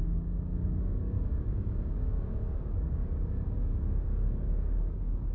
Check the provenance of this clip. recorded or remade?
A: remade